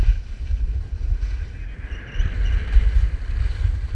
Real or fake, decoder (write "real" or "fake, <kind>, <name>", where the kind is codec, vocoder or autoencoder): real